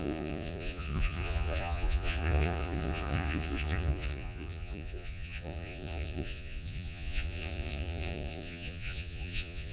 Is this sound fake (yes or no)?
yes